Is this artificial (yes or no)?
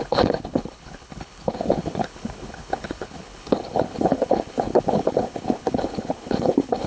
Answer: yes